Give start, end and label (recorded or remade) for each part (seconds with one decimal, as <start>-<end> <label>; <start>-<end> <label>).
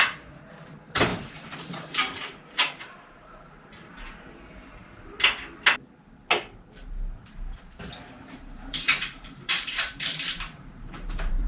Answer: 0.0-4.8 remade; 4.8-8.2 recorded; 8.2-11.5 remade